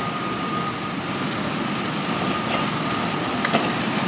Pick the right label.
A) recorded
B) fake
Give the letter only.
B